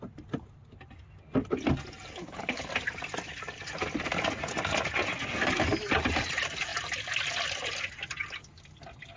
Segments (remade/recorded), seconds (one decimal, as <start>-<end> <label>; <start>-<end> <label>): 0.0-2.2 recorded; 2.2-2.7 remade; 2.7-9.2 recorded